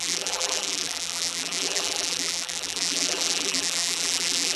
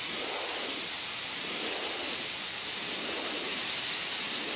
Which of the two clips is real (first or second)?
second